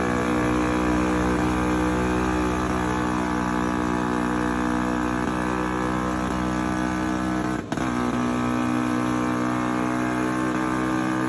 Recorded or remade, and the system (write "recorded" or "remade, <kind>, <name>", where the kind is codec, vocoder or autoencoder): recorded